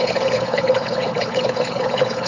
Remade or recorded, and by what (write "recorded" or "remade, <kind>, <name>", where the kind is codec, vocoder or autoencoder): remade, codec, HILCodec